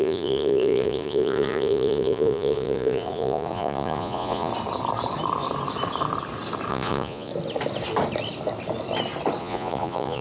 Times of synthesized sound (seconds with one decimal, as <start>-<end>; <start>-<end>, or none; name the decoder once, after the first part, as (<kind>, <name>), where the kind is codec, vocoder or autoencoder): 0.0-4.5 (vocoder, Vocos); 6.7-7.3; 9.4-10.2